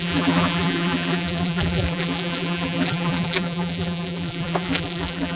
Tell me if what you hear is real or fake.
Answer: fake